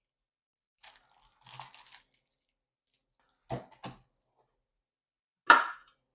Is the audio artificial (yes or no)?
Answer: no